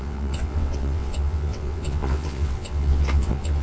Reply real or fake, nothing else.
fake